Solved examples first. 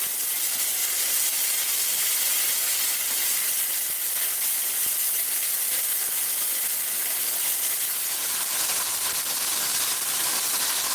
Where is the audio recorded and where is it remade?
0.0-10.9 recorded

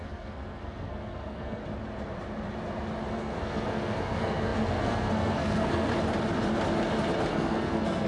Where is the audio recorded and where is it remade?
0.0-1.6 remade; 1.6-3.1 recorded; 3.1-5.9 remade; 5.9-7.3 recorded; 7.3-8.1 remade

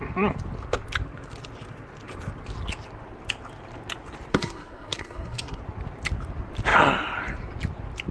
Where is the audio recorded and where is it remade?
0.0-4.3 recorded; 4.3-5.6 remade; 5.6-8.1 recorded

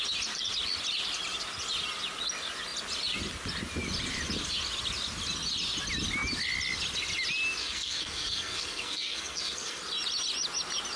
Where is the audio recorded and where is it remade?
0.0-7.6 recorded; 7.6-9.8 remade; 9.8-11.0 recorded

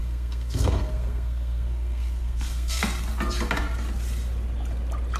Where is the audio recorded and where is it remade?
0.0-2.8 remade; 2.8-5.2 recorded